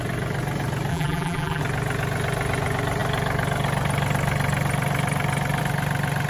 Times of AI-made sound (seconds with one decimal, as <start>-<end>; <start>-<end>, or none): 0.9-1.6

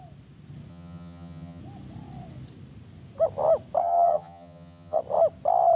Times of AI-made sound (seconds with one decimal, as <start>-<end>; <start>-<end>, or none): 0.7-1.6; 3.8-5.0

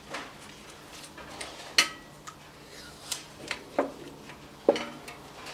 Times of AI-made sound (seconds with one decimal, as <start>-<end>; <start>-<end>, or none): 3.1-3.9

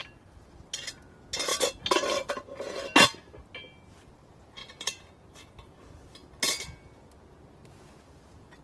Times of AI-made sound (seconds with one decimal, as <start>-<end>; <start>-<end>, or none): 1.5-2.3; 4.6-5.4

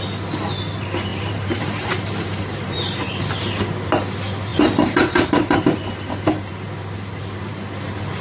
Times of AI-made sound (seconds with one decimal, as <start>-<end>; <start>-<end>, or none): 1.1-3.2; 4.5-6.5

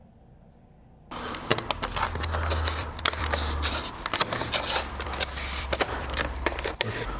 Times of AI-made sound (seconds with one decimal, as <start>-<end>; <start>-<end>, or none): 2.8-6.7

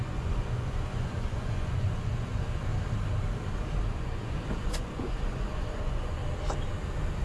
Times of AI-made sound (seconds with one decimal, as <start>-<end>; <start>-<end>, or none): 0.0-2.7; 3.9-6.2